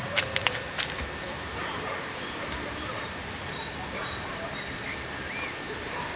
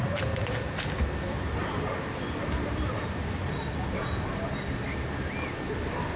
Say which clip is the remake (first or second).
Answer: first